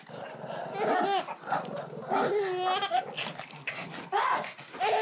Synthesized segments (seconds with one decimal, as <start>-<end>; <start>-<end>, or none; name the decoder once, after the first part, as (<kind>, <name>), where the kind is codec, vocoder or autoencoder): none